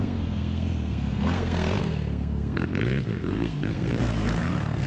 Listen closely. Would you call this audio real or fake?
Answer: fake